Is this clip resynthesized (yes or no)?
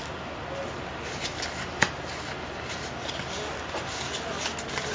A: no